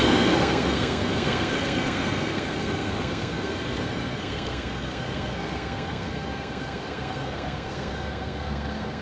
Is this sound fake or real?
fake